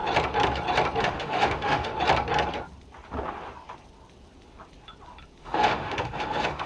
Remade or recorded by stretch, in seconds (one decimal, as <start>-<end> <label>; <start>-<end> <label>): 0.0-1.0 recorded; 1.0-1.9 remade; 1.9-5.4 recorded; 5.4-6.7 remade